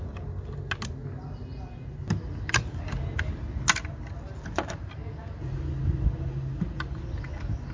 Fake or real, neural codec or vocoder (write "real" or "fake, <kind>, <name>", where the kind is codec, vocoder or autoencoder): real